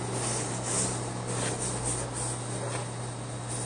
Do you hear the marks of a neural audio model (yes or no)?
no